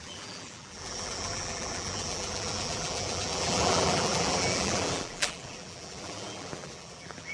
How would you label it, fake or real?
fake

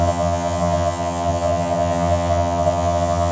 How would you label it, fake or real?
fake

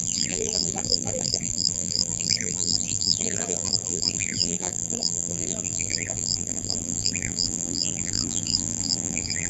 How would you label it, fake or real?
fake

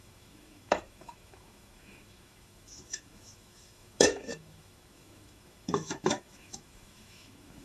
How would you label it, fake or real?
fake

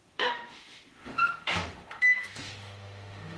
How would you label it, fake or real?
fake